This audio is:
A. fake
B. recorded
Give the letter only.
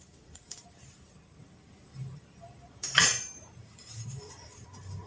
A